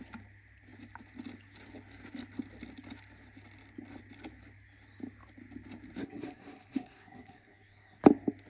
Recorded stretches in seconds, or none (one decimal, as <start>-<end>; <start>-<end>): 0.0-6.0; 8.0-8.5